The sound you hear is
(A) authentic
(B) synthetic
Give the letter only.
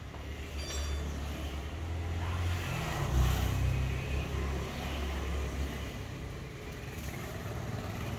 A